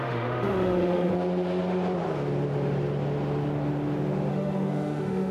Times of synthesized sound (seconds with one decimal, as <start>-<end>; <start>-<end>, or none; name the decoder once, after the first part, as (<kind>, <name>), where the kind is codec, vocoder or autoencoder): 0.0-1.1 (autoencoder, DAC-VAE); 4.3-5.3